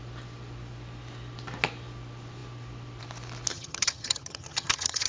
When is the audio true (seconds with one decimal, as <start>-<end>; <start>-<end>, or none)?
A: 0.0-3.5